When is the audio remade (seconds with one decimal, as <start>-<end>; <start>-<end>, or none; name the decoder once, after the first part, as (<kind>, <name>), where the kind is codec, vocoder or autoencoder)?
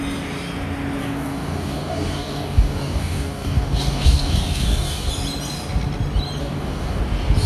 1.0-5.1 (codec, DAC); 6.4-7.0